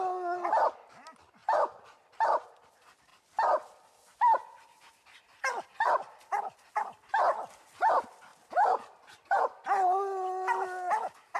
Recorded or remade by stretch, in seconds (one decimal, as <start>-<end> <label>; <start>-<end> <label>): 0.0-1.4 recorded; 1.4-2.7 remade; 2.7-8.3 recorded; 8.3-9.4 remade; 9.4-11.4 recorded